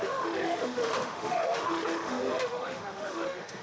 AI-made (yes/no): yes